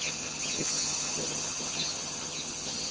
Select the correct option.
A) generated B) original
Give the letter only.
A